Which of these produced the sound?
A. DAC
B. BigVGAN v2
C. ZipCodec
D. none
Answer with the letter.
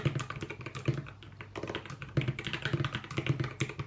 D